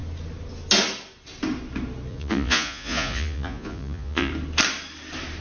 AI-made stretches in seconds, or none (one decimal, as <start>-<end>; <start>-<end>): 2.1-4.3